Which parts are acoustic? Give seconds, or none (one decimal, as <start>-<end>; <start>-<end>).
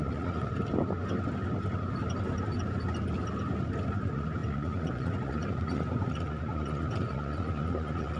0.5-3.9